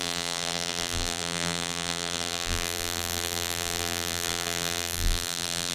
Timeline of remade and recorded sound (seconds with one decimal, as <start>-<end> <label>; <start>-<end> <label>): 0.0-5.7 remade